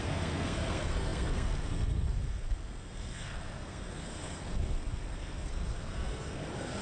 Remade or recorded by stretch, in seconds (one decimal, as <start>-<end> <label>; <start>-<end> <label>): 0.0-6.8 remade